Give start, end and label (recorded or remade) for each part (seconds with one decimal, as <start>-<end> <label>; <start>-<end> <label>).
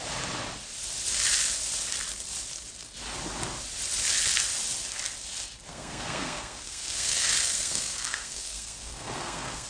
0.0-5.7 recorded; 5.7-9.7 remade